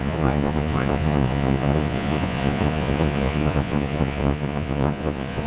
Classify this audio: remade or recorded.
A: remade